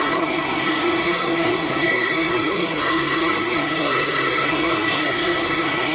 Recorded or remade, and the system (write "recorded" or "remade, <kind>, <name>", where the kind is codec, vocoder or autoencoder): remade, codec, SNAC